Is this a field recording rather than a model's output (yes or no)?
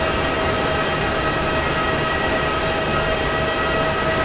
yes